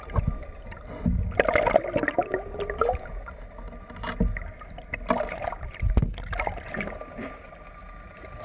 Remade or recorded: recorded